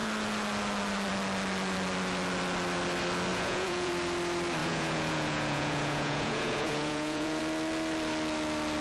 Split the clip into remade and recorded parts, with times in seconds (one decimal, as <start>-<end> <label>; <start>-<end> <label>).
0.0-3.3 recorded; 3.3-3.9 remade; 3.9-4.6 recorded; 4.6-7.4 remade; 7.4-8.8 recorded